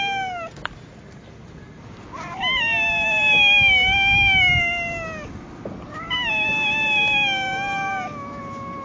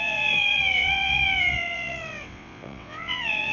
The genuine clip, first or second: first